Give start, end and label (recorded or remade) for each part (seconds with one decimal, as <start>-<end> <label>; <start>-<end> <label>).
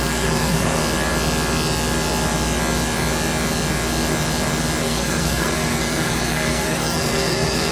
0.0-0.8 remade; 0.8-4.8 recorded; 4.8-7.7 remade